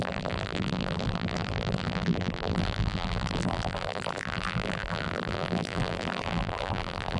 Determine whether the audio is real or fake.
fake